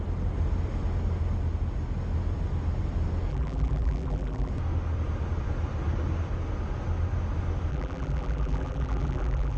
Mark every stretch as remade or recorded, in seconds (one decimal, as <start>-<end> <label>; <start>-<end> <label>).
0.0-3.3 recorded; 3.3-4.5 remade; 4.5-7.7 recorded; 7.7-9.6 remade